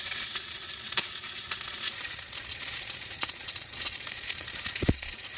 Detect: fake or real fake